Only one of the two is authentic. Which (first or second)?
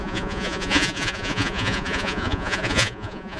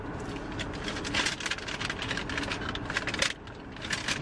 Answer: second